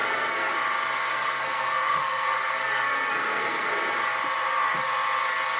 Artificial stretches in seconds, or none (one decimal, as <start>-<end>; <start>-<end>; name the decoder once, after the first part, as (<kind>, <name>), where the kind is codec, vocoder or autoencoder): 0.0-0.5 (codec, SNAC); 1.1-3.7